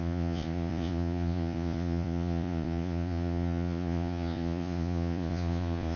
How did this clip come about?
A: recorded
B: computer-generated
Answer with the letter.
B